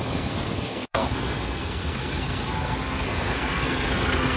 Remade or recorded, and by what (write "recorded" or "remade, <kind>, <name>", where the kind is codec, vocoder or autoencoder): remade, codec, SNAC